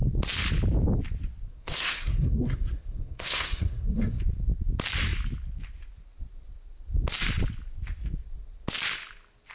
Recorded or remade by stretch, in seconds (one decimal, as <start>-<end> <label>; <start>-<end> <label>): 0.0-1.5 recorded; 1.5-4.2 remade; 4.2-9.5 recorded